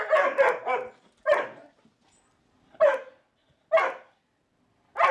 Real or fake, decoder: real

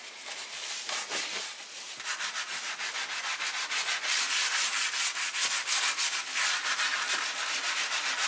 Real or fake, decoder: real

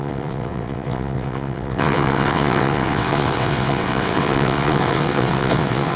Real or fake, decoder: fake, vocoder, WaveNeXt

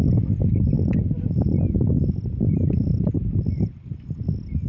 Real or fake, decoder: real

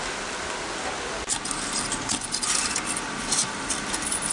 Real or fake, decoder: real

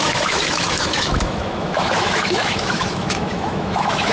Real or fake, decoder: fake, autoencoder, DAC-VAE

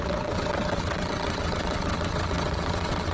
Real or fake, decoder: fake, vocoder, WaveNeXt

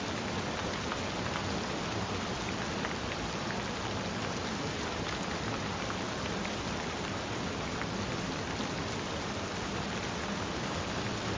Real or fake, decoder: real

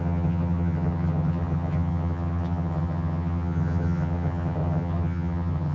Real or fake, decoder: fake, vocoder, HiFi-GAN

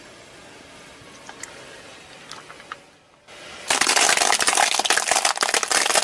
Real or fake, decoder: real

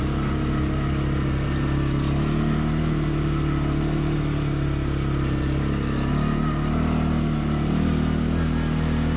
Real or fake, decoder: real